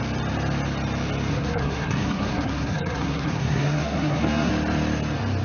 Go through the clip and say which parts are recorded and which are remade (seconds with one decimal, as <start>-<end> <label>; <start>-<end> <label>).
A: 0.0-1.3 recorded; 1.3-4.5 remade; 4.5-5.4 recorded